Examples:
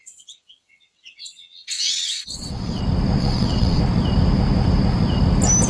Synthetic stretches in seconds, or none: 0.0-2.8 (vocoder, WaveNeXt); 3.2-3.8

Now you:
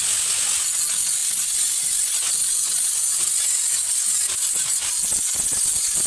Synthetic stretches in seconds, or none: none

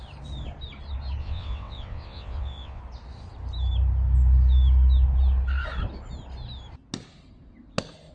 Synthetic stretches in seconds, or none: 1.2-2.8 (vocoder, WaveNeXt)

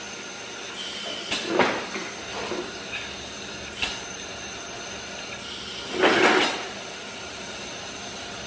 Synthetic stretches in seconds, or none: none